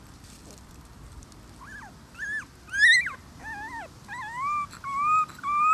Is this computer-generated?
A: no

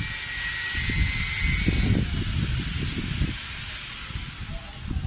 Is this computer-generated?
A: no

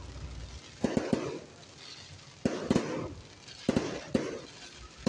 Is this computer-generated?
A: no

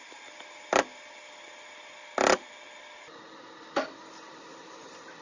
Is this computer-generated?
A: no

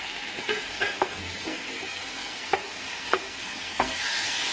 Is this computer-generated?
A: yes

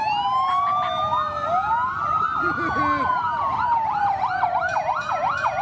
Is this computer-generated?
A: no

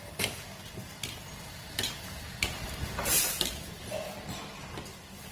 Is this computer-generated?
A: no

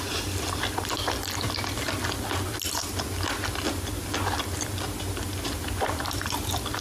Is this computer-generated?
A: no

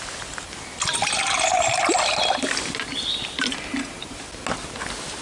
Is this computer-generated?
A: no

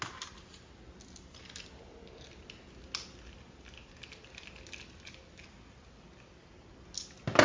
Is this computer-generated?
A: no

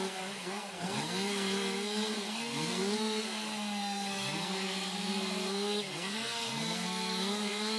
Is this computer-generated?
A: yes